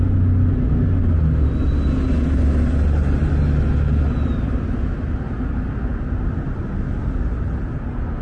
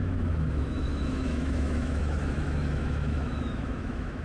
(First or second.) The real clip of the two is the first